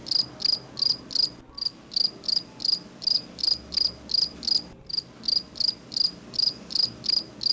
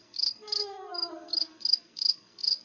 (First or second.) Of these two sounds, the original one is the first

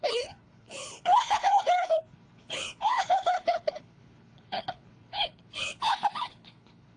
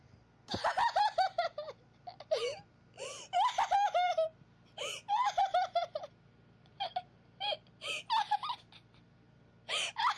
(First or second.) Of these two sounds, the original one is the second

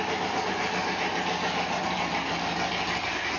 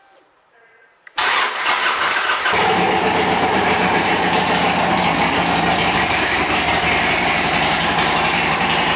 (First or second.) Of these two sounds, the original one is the first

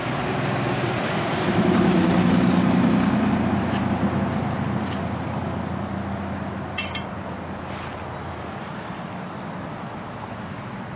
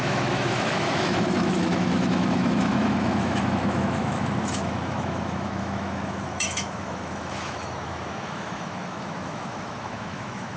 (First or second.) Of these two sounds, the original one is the first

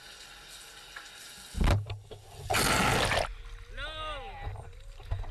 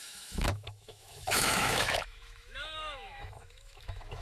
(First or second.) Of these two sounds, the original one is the first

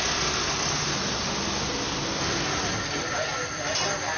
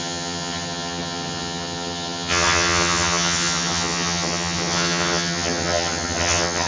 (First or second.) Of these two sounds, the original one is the first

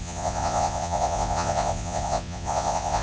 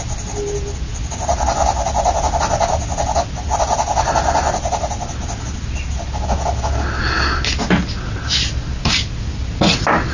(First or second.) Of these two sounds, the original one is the second